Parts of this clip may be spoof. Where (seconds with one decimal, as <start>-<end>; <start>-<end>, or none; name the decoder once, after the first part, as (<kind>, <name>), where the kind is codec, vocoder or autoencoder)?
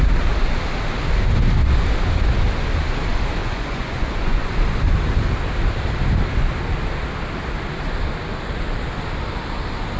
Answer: 3.4-4.5 (vocoder, Vocos)